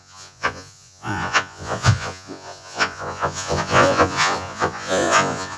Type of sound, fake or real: fake